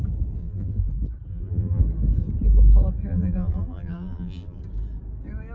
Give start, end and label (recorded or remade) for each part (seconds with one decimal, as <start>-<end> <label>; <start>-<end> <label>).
0.0-0.4 recorded; 0.4-0.9 remade; 0.9-1.3 recorded; 1.3-1.8 remade; 1.8-3.1 recorded; 3.1-4.6 remade; 4.6-5.5 recorded